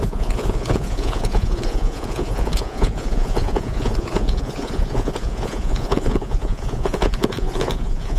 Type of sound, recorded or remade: remade